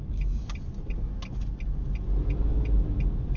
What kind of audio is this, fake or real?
real